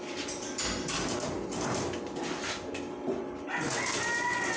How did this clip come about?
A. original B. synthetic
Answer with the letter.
A